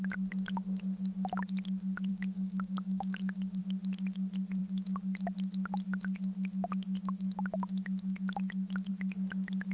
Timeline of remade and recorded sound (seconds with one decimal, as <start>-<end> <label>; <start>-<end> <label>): 0.0-2.1 recorded; 2.1-3.6 remade; 3.6-9.7 recorded